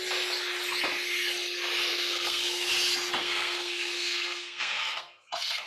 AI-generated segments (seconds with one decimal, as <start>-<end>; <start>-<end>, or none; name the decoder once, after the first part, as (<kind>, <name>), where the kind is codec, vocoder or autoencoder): 1.9-2.7 (codec, SNAC); 3.2-5.7